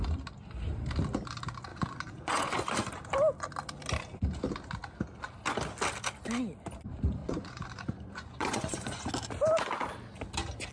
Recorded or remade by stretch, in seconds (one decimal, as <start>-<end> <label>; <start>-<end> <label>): 0.0-1.7 recorded; 1.7-2.6 remade; 2.6-7.2 recorded; 7.2-9.1 remade; 9.1-10.7 recorded